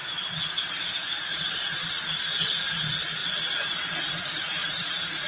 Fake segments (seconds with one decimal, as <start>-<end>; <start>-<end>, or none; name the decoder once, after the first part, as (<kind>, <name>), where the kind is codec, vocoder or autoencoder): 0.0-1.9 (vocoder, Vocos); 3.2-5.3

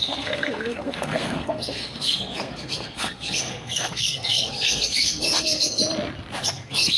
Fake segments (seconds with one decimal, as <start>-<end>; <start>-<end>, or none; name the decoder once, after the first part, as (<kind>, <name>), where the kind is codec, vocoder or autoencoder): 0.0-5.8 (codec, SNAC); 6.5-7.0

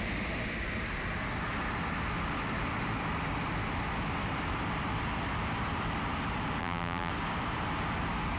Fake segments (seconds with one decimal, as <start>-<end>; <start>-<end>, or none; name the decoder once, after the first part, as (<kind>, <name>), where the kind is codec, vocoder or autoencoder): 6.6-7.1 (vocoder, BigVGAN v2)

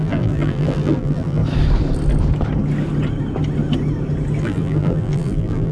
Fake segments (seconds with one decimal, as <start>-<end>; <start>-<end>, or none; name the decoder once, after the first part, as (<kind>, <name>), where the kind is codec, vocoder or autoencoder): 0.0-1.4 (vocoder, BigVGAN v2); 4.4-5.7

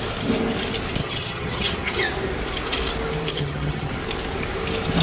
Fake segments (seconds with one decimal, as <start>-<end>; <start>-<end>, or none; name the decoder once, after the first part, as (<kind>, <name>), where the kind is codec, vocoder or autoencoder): 1.0-2.1 (vocoder, HiFi-GAN); 3.3-3.9

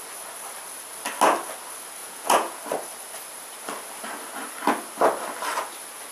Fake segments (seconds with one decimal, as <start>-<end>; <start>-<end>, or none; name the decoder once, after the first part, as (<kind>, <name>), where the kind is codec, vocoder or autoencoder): 2.0-2.6 (vocoder, Vocos)

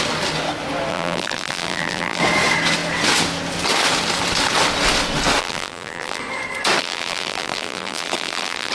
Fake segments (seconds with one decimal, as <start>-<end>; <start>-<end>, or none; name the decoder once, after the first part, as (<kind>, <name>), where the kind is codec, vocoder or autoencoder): 0.9-2.2 (vocoder, BigVGAN v2); 5.4-6.2; 6.8-8.7

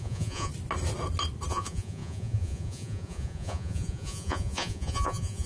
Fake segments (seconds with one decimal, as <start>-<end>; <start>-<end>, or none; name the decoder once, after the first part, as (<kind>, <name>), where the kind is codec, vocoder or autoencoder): 0.0-0.5 (vocoder, Vocos); 1.5-5.5